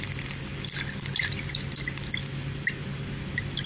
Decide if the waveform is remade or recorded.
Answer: recorded